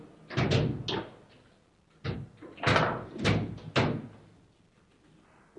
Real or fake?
real